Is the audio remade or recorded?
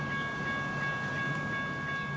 recorded